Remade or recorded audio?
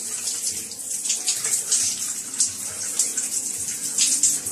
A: recorded